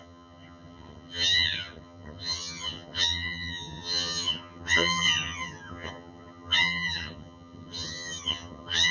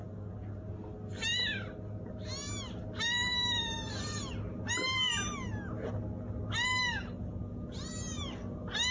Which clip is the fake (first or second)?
first